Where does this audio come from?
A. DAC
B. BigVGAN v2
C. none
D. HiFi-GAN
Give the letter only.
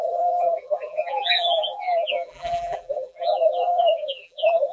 B